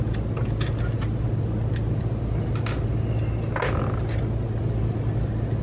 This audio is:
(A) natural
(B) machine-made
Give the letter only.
A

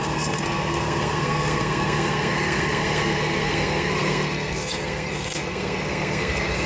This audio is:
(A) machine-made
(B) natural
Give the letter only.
A